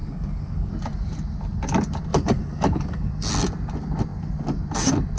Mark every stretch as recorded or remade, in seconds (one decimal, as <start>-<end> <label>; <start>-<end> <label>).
0.0-0.7 remade; 0.7-2.1 recorded; 2.1-3.1 remade; 3.1-5.2 recorded